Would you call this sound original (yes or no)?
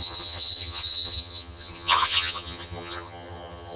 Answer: no